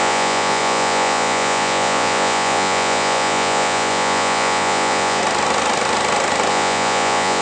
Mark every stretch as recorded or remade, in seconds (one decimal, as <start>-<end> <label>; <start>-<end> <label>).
0.0-5.2 remade; 5.2-6.5 recorded; 6.5-7.4 remade

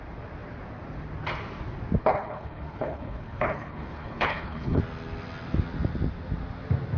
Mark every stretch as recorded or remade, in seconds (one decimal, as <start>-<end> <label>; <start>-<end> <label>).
0.0-2.0 recorded; 2.0-4.8 remade; 4.8-7.0 recorded

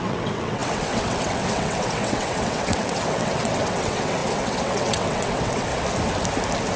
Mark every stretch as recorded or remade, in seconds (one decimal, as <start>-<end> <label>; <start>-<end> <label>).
0.0-5.7 remade; 5.7-6.8 recorded

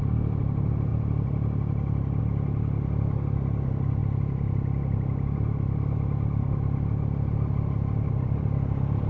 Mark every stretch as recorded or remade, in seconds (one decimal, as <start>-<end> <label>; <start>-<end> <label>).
0.0-9.1 recorded